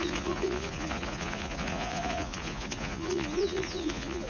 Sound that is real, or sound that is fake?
fake